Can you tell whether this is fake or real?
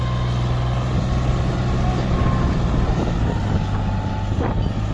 real